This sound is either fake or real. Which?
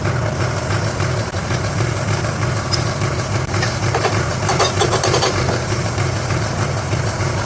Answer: fake